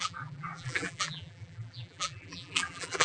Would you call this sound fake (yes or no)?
yes